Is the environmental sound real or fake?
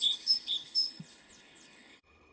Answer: fake